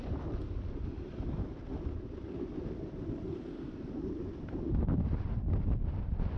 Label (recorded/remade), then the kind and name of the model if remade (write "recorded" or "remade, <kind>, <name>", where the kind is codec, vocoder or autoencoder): recorded